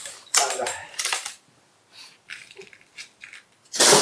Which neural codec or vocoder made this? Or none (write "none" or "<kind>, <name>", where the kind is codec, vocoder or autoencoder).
vocoder, BigVGAN v2